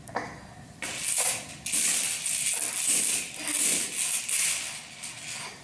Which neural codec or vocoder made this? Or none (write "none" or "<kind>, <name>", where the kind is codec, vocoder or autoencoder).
none